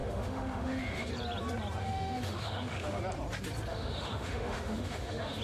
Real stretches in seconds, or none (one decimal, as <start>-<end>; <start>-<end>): 1.1-1.8; 3.0-3.7